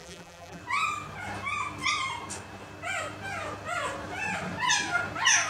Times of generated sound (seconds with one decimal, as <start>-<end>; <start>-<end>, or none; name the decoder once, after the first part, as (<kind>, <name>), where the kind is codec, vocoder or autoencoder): 0.0-0.6 (vocoder, BigVGAN v2)